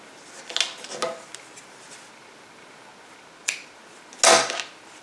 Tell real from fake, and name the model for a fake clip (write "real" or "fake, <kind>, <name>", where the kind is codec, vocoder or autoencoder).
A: real